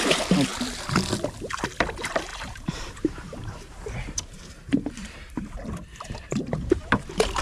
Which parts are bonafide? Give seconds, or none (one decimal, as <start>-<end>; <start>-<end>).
0.0-2.3; 5.3-5.9